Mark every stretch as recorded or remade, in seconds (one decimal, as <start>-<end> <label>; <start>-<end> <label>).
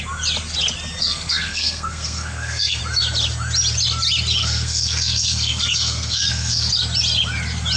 0.0-1.0 recorded; 1.0-2.8 remade; 2.8-4.4 recorded; 4.4-6.7 remade; 6.7-7.8 recorded